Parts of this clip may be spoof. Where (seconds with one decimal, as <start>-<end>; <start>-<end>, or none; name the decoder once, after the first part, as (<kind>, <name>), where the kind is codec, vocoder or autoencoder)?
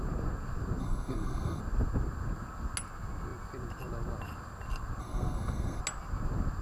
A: 0.8-1.6 (codec, SNAC); 5.0-5.8